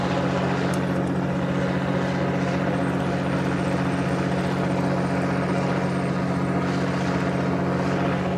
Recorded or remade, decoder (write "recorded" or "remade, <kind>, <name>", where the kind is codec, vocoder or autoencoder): recorded